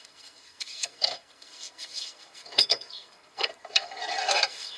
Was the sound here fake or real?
fake